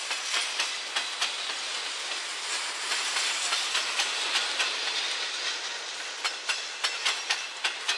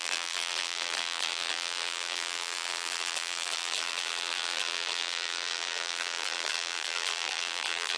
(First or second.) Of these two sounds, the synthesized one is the second